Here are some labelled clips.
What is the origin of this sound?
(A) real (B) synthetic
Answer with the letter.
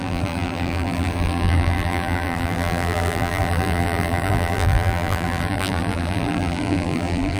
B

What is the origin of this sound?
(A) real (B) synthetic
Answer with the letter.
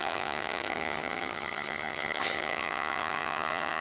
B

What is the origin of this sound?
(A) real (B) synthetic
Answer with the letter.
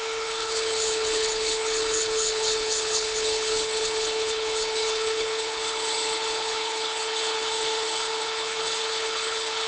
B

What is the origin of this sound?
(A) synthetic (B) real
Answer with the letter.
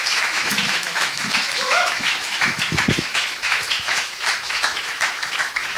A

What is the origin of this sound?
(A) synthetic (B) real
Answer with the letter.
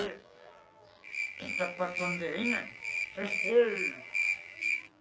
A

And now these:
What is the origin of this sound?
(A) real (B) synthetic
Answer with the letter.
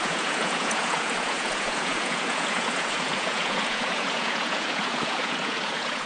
B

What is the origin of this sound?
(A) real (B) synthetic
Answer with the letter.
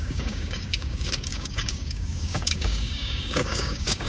B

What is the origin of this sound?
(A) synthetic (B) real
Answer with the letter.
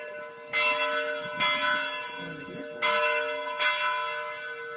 B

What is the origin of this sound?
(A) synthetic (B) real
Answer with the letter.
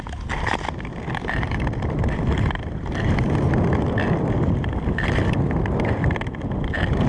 B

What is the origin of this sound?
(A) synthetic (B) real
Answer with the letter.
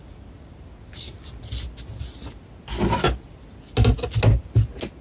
B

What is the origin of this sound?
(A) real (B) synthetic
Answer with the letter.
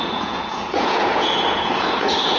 B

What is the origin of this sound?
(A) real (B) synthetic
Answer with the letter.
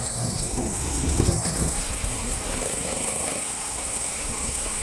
B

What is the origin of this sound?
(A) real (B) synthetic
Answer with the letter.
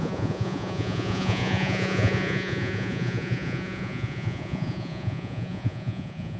B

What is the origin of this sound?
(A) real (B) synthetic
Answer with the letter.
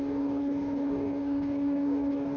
B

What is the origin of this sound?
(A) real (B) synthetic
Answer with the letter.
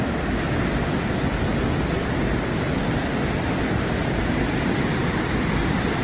A